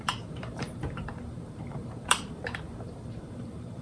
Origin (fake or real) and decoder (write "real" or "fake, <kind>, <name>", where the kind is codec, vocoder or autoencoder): fake, vocoder, BigVGAN v2